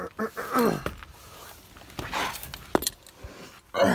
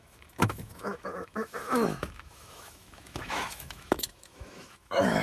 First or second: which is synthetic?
second